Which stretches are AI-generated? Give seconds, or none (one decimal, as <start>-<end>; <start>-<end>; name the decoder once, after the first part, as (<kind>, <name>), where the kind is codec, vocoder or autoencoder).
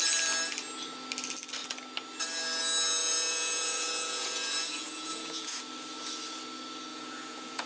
3.0-5.6 (vocoder, Vocos); 6.9-7.7